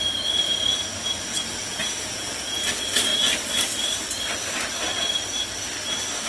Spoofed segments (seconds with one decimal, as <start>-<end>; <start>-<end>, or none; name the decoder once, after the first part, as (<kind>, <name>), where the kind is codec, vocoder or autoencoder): 1.6-2.7 (vocoder, Vocos)